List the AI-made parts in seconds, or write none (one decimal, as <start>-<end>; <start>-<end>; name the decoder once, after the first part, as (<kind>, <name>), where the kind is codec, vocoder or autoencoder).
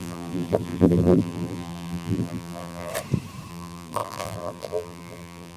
0.0-2.9 (vocoder, BigVGAN v2); 3.5-5.6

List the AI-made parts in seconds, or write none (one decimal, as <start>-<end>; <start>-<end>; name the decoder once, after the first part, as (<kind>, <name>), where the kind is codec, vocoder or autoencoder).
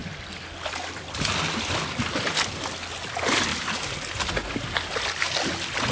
0.0-2.5 (vocoder, BigVGAN v2)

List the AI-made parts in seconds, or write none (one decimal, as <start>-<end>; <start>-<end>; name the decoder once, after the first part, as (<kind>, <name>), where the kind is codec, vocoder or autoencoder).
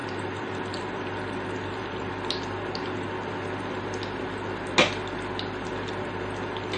0.0-2.1 (vocoder, BigVGAN v2)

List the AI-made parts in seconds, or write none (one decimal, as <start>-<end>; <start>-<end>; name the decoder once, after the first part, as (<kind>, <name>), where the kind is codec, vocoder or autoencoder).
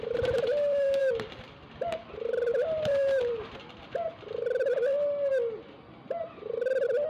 1.0-5.3 (vocoder, BigVGAN v2)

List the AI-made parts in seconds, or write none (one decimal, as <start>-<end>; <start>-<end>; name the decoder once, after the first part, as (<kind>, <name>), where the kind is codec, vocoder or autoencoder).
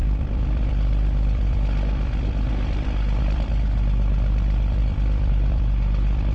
0.0-6.3 (vocoder, BigVGAN v2)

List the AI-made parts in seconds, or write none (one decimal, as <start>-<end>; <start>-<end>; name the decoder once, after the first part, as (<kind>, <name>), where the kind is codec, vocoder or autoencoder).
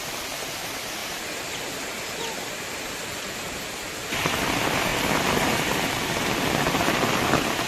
none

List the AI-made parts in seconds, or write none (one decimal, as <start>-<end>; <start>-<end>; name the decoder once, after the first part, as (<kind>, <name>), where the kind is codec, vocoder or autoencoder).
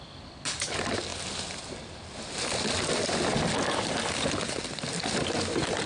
none